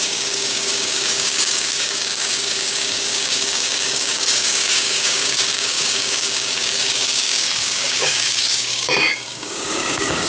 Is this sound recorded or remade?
remade